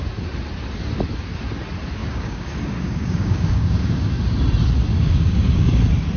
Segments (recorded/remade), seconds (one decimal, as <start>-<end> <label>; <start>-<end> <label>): 0.0-2.0 recorded; 2.0-4.1 remade; 4.1-4.9 recorded; 4.9-5.8 remade; 5.8-6.2 recorded